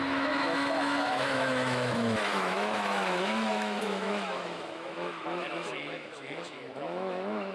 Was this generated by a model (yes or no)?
yes